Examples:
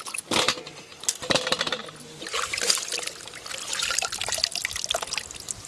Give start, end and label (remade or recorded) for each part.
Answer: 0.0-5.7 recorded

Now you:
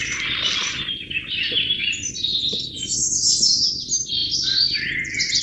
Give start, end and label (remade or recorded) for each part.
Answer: 0.0-0.6 recorded; 0.6-1.7 remade; 1.7-2.3 recorded; 2.3-2.9 remade; 2.9-4.2 recorded; 4.2-5.4 remade